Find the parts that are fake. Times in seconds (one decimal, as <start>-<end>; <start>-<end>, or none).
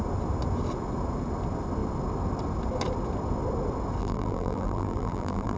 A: 4.0-5.6